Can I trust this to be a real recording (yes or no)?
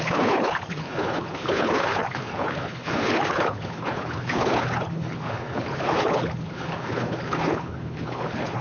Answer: no